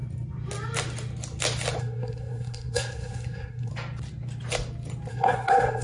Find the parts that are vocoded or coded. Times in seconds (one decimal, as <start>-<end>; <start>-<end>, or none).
1.8-3.7; 5.1-5.8